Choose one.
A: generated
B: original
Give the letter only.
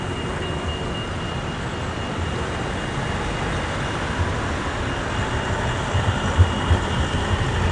B